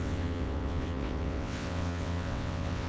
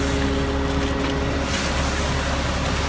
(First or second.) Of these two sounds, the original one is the second